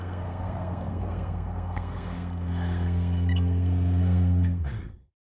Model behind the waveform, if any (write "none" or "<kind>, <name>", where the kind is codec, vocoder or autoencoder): codec, SNAC